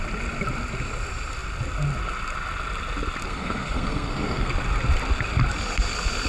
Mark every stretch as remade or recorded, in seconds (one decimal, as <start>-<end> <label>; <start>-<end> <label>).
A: 0.0-3.3 recorded; 3.3-4.5 remade; 4.5-6.3 recorded